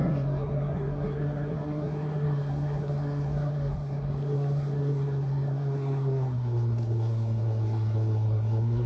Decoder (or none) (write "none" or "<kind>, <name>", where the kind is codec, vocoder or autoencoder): codec, SNAC